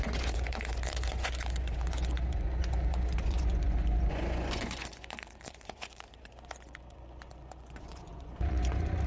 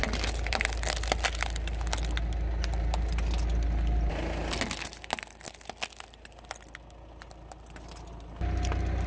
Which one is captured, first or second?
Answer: second